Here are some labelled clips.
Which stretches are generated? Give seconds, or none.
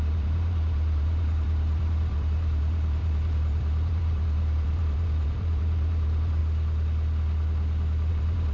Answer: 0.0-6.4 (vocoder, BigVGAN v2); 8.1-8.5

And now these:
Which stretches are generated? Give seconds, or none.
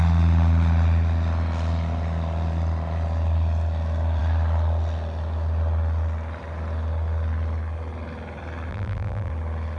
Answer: 8.7-9.3 (vocoder, BigVGAN v2)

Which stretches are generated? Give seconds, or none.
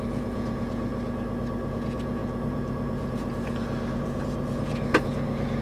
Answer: 0.0-0.9 (vocoder, Vocos); 1.7-5.6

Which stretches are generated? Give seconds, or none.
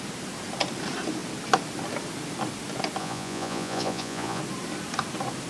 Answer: 3.0-4.4 (vocoder, Vocos)